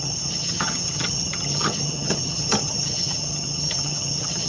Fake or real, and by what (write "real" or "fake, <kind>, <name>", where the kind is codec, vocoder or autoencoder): fake, vocoder, HiFi-GAN